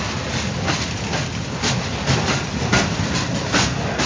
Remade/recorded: recorded